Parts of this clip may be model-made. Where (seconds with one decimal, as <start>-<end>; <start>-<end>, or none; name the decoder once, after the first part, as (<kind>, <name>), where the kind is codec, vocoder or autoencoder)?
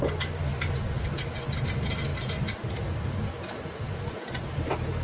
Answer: none